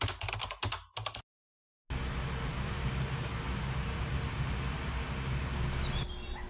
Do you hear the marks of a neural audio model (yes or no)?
no